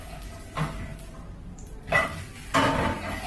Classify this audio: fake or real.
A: real